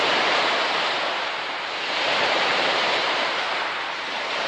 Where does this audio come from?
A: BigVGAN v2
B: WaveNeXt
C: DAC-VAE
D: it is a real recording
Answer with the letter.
A